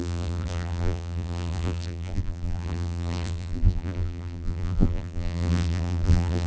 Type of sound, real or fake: fake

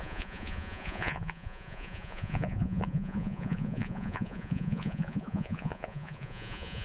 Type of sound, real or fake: fake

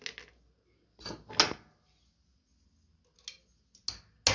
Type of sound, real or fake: real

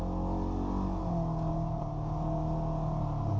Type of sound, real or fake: real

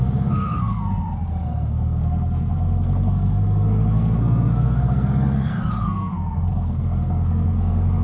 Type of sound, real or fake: fake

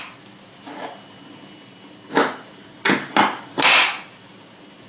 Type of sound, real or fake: real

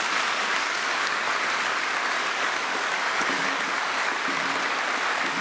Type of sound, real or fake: fake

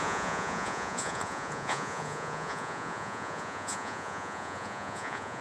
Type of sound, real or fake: fake